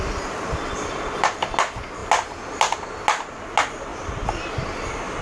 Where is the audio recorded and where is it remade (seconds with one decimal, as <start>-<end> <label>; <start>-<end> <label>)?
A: 0.0-3.9 recorded; 3.9-4.7 remade; 4.7-5.2 recorded